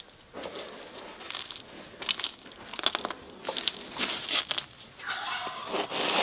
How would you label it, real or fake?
real